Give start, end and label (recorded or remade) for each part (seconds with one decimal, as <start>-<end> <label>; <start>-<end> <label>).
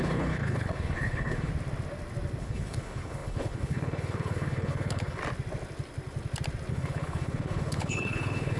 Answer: 0.0-1.5 remade; 1.5-2.4 recorded; 2.4-5.2 remade; 5.2-6.7 recorded; 6.7-8.6 remade